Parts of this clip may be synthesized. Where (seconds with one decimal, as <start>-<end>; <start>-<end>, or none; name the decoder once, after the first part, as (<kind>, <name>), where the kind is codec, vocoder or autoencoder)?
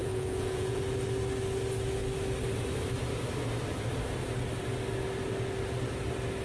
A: 0.0-0.8 (vocoder, Vocos)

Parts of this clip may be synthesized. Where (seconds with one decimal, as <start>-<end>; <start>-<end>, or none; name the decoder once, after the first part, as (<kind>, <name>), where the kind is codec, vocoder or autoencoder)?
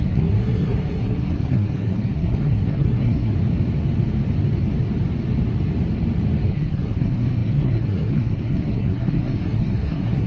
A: 0.0-3.3 (codec, SNAC); 6.5-10.3